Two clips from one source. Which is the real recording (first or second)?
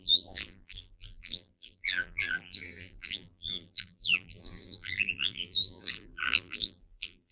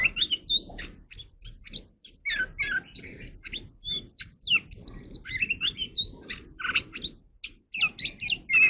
second